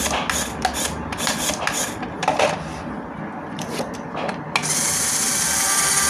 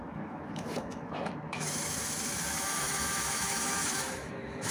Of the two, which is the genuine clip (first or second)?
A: first